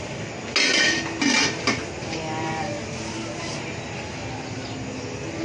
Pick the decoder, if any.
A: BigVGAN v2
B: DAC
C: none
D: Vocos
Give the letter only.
C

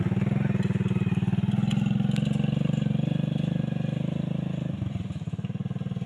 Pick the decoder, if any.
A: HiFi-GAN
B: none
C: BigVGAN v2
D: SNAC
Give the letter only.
B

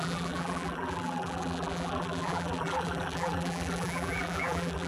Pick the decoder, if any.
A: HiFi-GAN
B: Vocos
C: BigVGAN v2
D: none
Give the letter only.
C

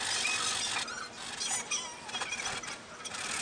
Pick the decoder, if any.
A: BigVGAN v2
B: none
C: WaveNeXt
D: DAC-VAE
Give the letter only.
B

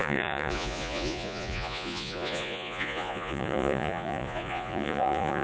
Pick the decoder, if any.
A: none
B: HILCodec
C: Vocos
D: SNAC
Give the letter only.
C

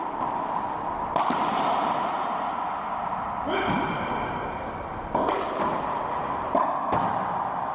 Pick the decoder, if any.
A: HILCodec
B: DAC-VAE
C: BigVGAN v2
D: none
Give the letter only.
D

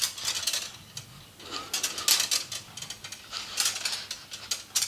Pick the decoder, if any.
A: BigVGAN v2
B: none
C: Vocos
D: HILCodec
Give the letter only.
B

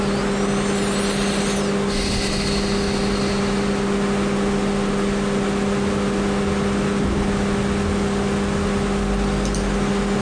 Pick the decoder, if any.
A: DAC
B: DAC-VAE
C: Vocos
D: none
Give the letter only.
D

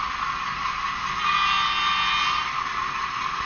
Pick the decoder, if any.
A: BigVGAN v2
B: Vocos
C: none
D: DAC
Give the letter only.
C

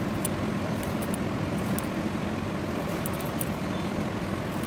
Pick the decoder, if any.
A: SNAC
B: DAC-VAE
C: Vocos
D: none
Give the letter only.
D